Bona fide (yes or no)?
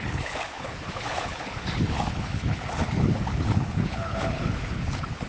no